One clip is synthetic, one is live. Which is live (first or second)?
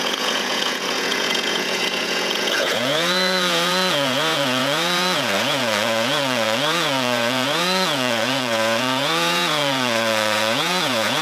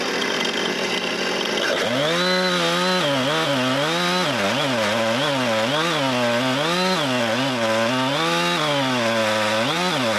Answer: second